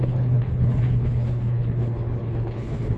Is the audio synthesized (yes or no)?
yes